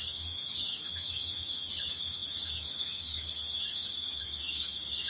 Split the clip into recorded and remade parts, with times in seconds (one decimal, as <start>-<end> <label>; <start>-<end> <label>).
0.0-5.1 remade